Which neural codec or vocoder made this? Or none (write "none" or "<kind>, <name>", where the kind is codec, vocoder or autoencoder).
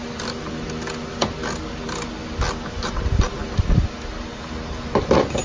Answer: none